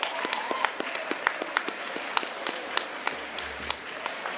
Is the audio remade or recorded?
remade